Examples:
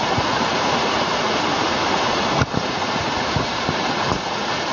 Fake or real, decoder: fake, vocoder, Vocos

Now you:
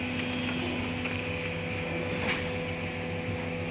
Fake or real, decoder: real